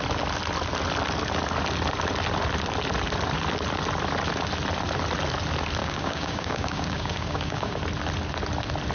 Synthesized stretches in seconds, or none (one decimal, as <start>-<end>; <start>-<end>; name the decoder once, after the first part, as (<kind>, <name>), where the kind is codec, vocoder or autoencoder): 5.8-7.8 (codec, DAC)